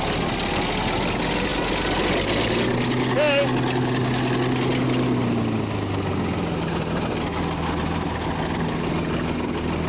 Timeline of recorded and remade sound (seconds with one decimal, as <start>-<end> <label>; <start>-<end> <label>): 0.0-9.9 recorded